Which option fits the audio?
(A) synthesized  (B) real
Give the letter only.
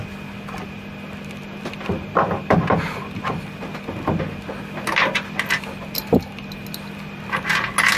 B